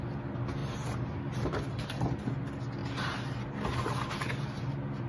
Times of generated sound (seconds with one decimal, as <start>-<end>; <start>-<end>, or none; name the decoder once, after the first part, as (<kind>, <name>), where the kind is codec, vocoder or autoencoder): 0.6-1.8 (vocoder, BigVGAN v2); 2.8-3.5